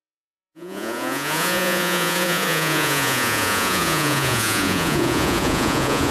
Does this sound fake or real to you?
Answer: fake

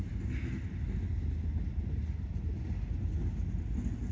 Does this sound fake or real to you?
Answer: real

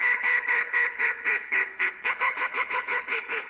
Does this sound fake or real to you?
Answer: fake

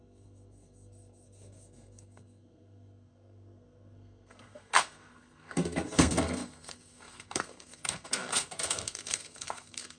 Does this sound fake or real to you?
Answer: fake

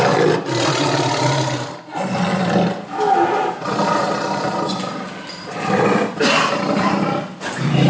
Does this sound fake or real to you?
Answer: real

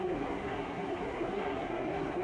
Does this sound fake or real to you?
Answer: fake